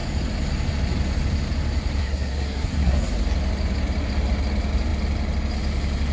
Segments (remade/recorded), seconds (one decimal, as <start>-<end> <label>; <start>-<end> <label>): 0.0-2.0 recorded; 2.0-3.1 remade; 3.1-6.1 recorded